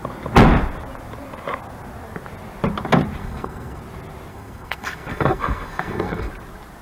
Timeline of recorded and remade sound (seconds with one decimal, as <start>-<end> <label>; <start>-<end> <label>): 0.0-3.2 recorded; 3.2-3.8 remade; 3.8-4.3 recorded; 4.3-6.3 remade; 6.3-6.8 recorded